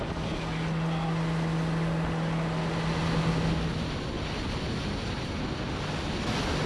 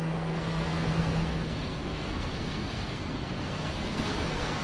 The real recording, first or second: first